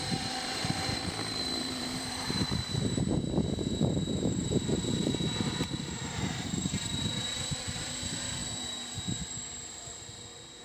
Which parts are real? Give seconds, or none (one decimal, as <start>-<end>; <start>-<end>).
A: none